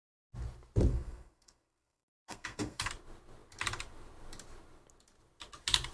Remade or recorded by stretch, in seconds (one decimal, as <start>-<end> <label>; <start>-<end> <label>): 0.0-0.9 recorded; 0.9-2.9 remade; 2.9-5.9 recorded